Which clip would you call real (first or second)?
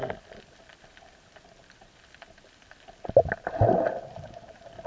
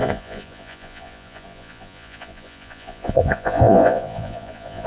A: first